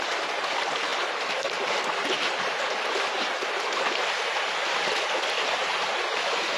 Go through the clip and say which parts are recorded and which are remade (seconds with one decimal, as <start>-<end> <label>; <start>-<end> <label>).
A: 0.0-6.6 recorded